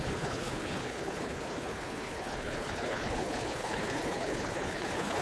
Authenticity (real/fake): fake